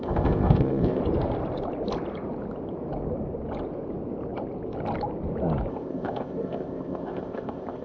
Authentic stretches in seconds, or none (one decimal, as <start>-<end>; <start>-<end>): 1.0-5.7